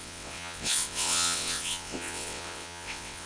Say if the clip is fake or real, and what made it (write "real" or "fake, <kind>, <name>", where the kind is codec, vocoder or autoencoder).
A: fake, vocoder, WaveNeXt